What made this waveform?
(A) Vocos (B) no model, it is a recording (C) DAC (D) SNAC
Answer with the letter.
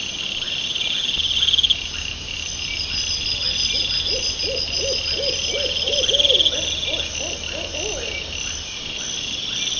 B